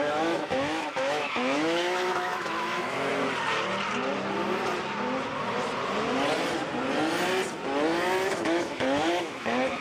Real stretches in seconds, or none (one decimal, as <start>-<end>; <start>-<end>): 3.1-8.2